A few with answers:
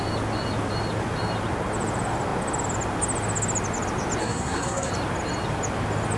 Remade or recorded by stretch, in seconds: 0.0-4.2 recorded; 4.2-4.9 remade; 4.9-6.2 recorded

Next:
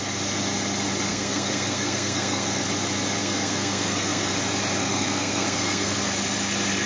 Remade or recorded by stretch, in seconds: 0.0-1.1 recorded; 1.1-2.6 remade; 2.6-3.2 recorded; 3.2-4.3 remade; 4.3-4.8 recorded; 4.8-6.0 remade; 6.0-6.9 recorded